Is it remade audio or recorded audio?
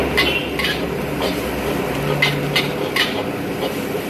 remade